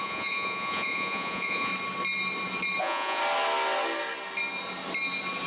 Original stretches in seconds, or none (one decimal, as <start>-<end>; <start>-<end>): 1.7-2.8; 3.2-5.5